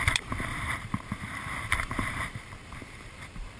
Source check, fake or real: fake